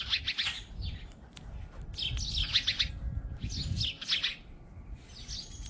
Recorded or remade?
recorded